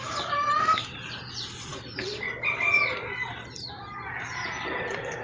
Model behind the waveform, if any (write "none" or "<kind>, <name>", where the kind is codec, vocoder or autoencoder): vocoder, BigVGAN v2